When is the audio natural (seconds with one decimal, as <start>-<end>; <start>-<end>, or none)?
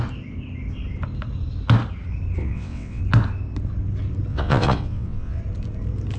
0.0-2.4; 3.0-4.3; 5.4-6.2